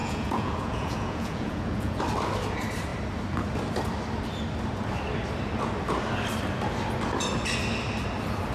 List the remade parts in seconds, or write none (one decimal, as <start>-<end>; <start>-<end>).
0.0-2.0